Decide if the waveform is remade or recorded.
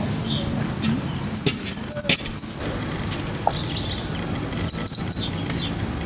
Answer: recorded